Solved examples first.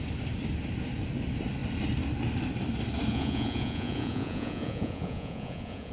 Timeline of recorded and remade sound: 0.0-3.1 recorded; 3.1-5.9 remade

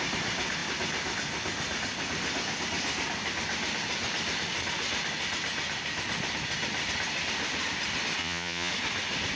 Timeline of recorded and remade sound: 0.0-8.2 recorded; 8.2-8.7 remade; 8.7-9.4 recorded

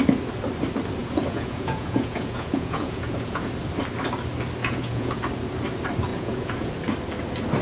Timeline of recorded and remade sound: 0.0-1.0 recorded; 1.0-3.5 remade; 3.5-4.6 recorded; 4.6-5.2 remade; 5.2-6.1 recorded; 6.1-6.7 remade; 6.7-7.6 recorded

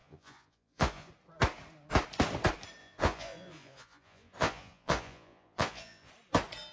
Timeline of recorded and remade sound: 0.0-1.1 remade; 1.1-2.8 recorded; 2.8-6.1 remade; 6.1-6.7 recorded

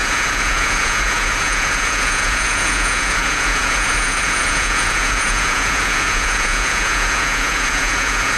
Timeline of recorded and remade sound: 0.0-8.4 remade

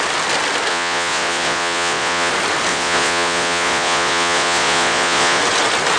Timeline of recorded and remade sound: 0.0-0.7 recorded; 0.7-2.3 remade; 2.3-2.7 recorded; 2.7-5.4 remade; 5.4-6.0 recorded

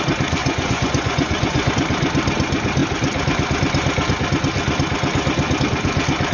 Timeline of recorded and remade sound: 0.0-0.4 recorded; 0.4-1.7 remade; 1.7-6.3 recorded

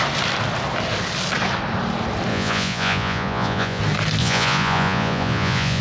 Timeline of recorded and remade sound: 0.0-2.3 recorded; 2.3-3.8 remade; 3.8-4.2 recorded; 4.2-5.8 remade